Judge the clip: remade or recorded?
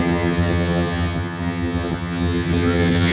remade